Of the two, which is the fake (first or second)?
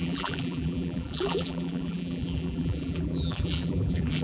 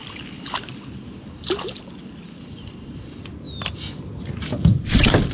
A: first